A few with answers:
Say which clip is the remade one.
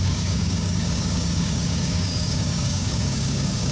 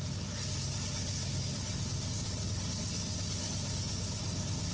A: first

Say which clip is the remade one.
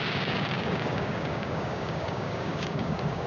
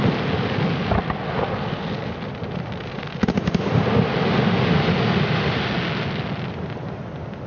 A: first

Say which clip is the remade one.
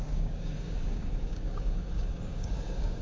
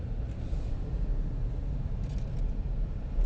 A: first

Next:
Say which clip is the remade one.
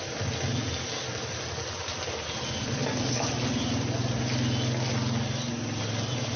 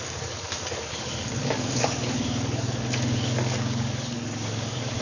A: second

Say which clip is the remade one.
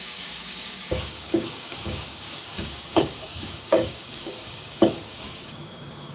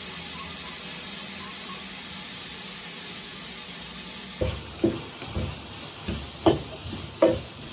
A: first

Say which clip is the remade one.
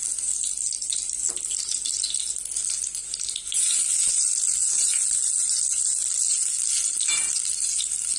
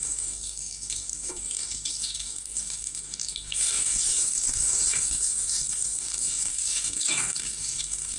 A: second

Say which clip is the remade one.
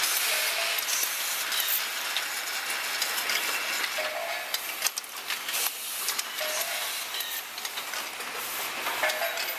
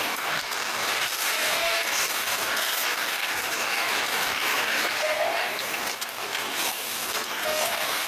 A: second